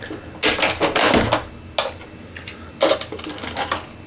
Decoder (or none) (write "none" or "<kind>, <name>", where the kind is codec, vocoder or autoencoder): none